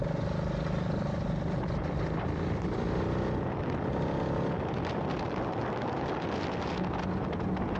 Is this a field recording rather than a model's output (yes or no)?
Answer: yes